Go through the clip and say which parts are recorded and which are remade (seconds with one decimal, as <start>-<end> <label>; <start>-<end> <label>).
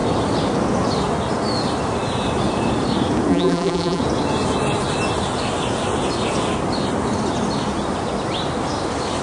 0.0-3.3 recorded; 3.3-4.0 remade; 4.0-9.2 recorded